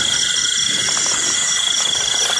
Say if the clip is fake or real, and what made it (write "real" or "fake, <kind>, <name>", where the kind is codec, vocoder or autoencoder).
real